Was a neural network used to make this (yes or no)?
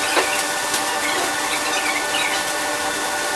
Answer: no